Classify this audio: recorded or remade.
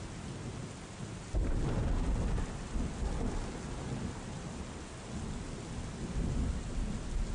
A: recorded